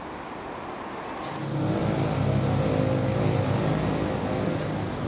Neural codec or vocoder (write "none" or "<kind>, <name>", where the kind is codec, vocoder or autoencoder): none